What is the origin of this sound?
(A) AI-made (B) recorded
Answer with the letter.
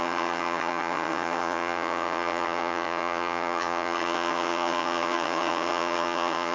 A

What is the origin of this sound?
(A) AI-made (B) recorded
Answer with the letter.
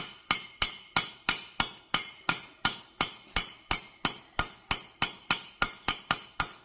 B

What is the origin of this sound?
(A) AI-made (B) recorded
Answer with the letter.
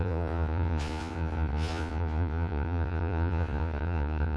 A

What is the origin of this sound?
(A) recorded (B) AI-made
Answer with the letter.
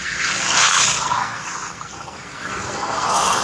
B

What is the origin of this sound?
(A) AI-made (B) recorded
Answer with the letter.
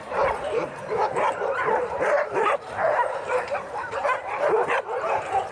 A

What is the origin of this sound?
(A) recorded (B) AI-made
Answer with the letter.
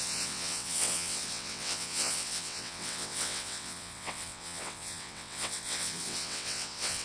B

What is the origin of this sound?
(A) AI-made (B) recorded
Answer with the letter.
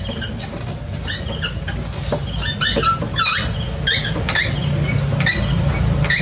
B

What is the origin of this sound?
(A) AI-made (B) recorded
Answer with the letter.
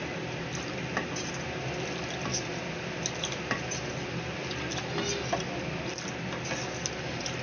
B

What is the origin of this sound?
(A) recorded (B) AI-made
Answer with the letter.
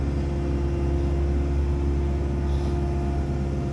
A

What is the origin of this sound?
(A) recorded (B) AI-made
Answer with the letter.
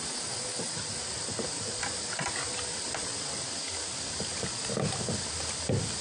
B